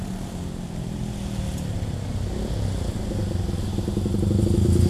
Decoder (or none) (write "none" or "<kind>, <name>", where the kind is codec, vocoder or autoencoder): none